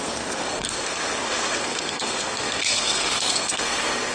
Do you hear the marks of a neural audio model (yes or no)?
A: yes